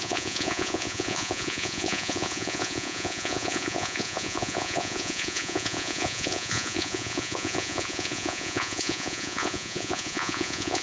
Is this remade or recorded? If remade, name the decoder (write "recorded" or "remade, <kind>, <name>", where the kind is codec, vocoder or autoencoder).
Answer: remade, vocoder, Vocos